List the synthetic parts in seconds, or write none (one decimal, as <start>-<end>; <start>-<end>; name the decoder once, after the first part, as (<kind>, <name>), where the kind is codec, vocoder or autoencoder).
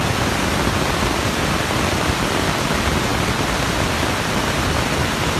none